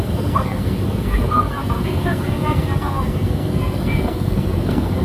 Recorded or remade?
remade